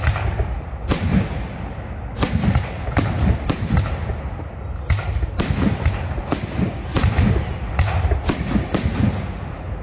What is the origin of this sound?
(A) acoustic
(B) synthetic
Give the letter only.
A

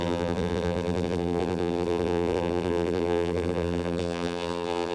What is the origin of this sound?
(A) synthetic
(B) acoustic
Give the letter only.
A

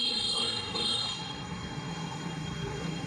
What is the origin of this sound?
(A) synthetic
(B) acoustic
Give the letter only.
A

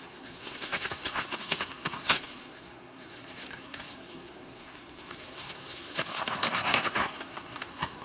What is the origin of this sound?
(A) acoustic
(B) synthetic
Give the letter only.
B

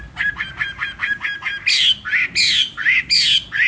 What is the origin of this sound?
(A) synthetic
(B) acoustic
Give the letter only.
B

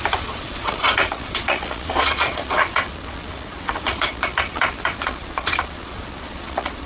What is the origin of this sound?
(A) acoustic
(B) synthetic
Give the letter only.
B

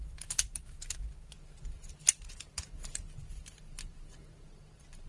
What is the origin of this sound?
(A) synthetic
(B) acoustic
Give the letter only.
A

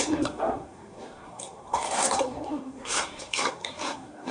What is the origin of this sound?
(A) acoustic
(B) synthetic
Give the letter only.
B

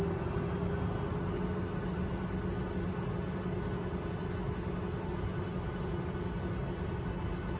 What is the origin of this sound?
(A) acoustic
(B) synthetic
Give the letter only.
A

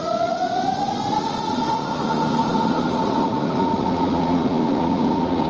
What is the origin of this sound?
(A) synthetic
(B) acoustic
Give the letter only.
A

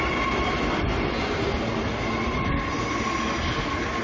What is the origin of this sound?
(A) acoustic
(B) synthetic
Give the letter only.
A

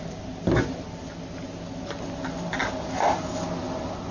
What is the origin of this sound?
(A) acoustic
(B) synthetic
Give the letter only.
A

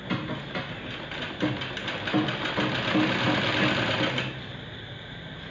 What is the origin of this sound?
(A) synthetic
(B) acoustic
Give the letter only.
B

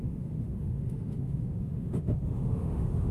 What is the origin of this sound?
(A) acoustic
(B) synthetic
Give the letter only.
B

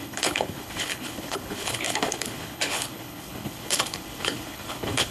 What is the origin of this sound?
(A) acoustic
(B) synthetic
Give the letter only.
B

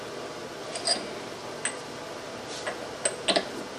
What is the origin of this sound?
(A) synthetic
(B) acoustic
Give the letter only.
B